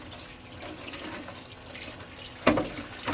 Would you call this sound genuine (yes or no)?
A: yes